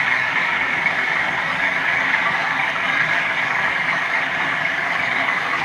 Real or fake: fake